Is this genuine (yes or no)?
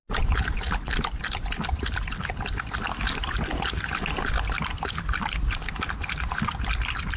yes